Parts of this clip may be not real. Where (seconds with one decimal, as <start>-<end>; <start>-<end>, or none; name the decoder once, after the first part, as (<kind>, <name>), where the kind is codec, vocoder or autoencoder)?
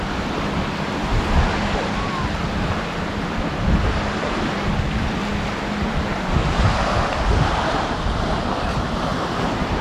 9.1-9.8 (vocoder, BigVGAN v2)